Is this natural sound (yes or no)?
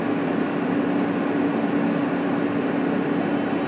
yes